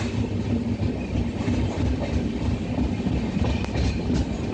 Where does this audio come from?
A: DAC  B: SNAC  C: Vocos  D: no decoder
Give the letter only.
D